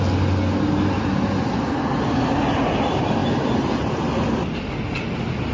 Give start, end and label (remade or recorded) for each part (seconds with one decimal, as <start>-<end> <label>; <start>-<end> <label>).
0.0-5.5 recorded